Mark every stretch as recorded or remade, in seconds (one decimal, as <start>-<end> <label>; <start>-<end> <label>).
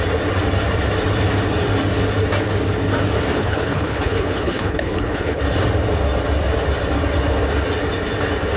0.0-3.4 recorded; 3.4-5.4 remade; 5.4-8.6 recorded